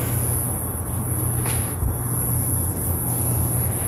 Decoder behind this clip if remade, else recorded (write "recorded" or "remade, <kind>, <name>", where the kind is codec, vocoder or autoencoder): recorded